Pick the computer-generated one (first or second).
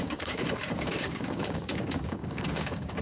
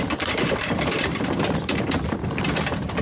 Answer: first